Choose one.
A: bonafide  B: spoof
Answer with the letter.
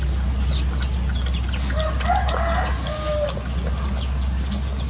A